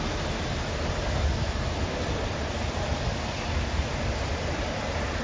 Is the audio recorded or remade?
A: recorded